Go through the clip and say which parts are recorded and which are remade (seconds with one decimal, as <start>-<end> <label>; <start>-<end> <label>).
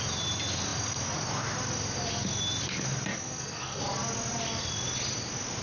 0.0-3.1 recorded; 3.1-3.8 remade; 3.8-5.6 recorded